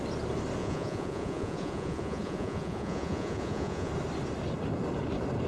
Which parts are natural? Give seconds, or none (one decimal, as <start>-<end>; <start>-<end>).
0.0-0.6; 3.9-5.5